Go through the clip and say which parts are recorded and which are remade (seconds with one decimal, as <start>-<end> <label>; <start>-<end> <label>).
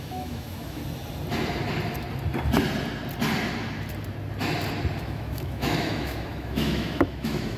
0.0-0.8 remade; 0.8-5.0 recorded; 5.0-7.6 remade